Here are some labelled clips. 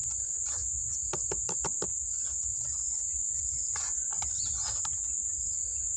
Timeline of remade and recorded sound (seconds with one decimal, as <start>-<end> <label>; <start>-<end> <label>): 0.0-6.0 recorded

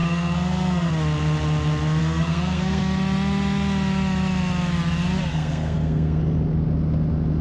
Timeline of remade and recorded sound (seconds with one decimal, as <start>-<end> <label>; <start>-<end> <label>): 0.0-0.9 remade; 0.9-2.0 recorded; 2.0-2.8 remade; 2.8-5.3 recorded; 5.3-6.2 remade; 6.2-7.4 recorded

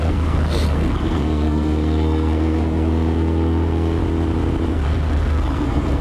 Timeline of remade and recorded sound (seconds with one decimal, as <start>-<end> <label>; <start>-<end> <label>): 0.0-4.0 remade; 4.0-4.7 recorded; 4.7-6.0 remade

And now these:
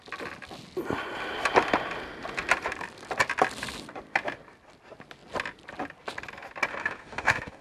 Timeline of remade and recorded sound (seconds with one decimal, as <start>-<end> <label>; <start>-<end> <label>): 0.0-6.7 recorded; 6.7-7.6 remade

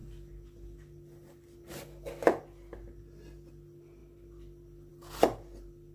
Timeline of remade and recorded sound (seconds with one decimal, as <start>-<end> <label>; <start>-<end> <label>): 0.0-5.9 recorded

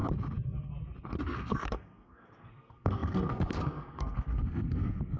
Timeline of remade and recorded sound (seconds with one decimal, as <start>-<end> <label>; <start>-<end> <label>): 0.0-1.2 recorded; 1.2-5.2 remade

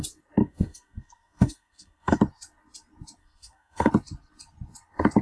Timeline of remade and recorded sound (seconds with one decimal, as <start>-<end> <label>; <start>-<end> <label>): 0.0-0.4 recorded; 0.4-2.2 remade; 2.2-3.2 recorded; 3.2-3.9 remade; 3.9-5.2 recorded

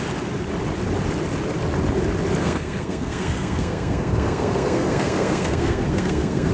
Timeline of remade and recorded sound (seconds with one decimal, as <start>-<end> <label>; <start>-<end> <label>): 0.0-2.4 recorded; 2.4-6.5 remade